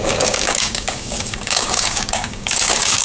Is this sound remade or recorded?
remade